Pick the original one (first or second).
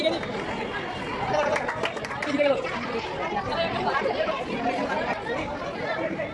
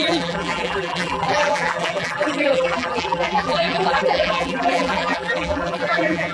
first